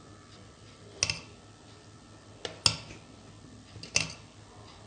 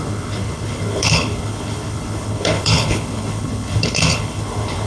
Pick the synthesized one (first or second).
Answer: second